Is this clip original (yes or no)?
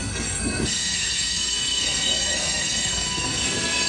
no